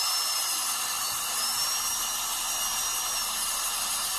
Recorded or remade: recorded